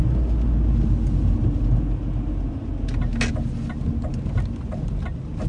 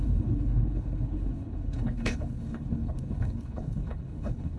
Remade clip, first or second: second